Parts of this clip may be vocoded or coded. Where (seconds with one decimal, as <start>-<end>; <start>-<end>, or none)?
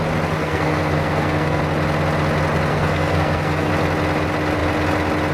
0.4-1.6; 2.7-3.7